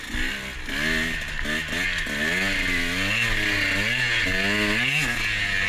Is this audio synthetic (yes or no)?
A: no